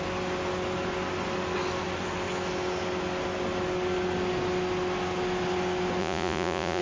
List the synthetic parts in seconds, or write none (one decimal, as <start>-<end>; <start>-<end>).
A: 6.0-6.8